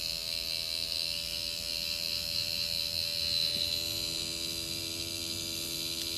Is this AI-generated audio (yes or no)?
no